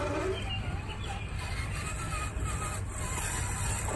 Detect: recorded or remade recorded